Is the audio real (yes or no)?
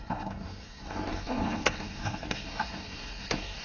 no